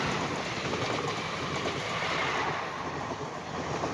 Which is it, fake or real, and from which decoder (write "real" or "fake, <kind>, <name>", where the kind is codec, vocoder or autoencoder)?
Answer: real